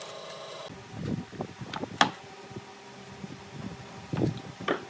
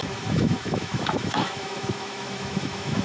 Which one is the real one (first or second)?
first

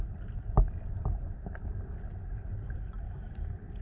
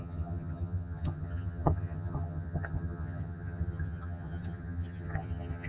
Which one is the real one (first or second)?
first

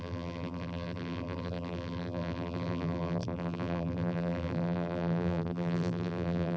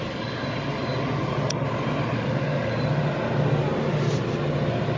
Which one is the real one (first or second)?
second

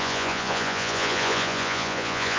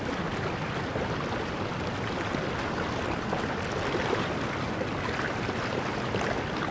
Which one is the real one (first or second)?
second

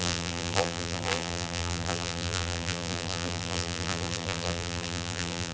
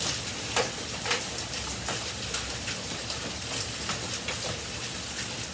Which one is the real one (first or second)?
second